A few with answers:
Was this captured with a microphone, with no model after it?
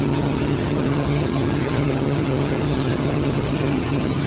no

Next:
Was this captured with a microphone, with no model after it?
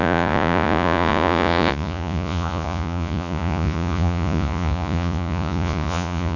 no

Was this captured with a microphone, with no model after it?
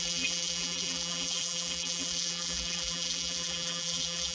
no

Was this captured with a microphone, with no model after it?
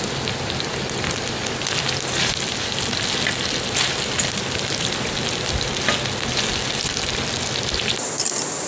yes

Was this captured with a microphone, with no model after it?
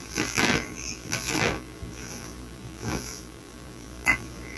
no